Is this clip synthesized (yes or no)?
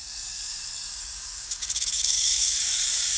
yes